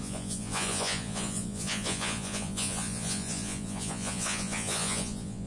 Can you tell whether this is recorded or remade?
remade